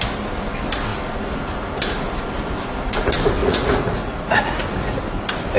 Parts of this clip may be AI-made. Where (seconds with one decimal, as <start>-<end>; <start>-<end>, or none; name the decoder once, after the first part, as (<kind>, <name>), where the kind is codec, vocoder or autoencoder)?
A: 3.4-5.0 (vocoder, Vocos)

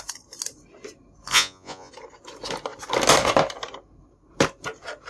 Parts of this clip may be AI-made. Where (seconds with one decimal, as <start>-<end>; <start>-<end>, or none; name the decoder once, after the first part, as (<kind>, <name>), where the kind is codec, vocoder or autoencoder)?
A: 1.3-1.9 (vocoder, Vocos)

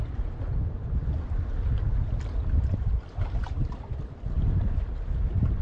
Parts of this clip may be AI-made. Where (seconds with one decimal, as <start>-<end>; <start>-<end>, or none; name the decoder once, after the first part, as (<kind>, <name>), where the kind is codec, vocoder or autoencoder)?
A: none

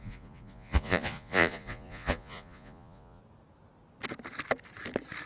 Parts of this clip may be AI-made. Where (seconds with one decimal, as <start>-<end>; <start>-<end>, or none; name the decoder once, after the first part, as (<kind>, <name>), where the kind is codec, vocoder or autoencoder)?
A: 0.0-3.2 (vocoder, Vocos)

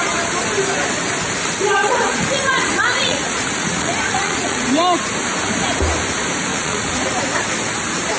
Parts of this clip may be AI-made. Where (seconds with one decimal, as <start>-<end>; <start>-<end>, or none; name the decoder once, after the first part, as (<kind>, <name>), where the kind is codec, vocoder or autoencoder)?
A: 1.8-4.7 (vocoder, Vocos); 6.5-7.2

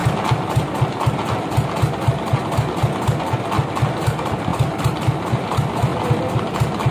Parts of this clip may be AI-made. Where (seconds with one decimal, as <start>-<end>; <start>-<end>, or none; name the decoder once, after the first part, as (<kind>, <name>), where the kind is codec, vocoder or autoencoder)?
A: none